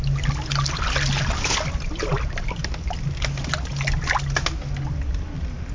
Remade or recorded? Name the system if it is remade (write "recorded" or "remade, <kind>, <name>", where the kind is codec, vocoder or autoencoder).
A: recorded